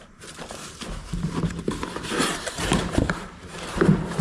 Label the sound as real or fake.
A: fake